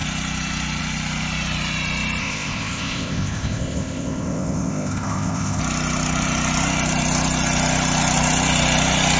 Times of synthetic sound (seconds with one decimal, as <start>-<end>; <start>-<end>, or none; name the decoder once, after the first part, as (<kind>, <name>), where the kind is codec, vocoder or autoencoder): 2.2-5.6 (codec, ZipCodec)